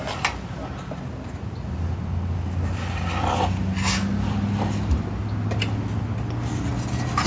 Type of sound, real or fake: real